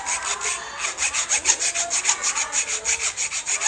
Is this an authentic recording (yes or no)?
yes